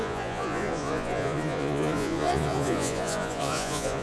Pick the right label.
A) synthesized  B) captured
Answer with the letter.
A